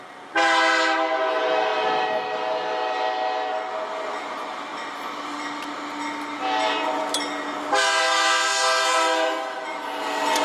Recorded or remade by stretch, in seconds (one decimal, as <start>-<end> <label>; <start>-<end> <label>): 0.0-10.4 recorded